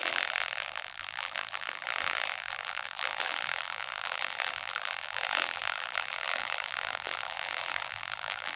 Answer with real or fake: fake